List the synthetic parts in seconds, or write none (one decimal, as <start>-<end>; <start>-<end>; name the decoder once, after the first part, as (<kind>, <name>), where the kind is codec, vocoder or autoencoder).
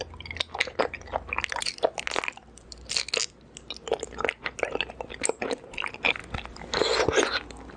none